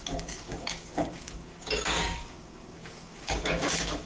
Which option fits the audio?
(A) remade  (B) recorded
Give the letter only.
A